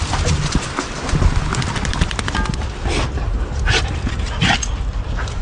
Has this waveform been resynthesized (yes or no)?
no